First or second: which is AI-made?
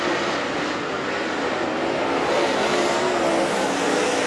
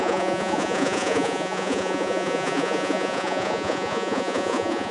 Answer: second